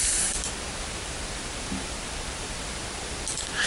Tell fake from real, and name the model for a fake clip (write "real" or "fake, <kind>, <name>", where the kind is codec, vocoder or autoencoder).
fake, vocoder, BigVGAN v2